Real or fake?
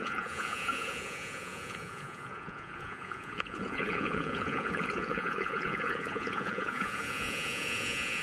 fake